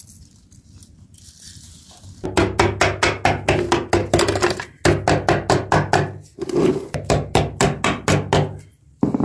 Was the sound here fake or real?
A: real